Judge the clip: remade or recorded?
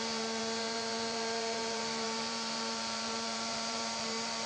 remade